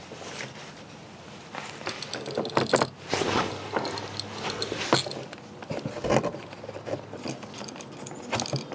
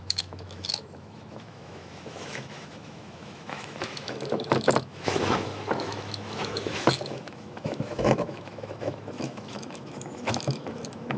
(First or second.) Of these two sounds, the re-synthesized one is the second